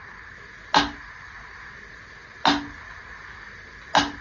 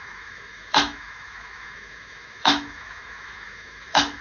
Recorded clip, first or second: first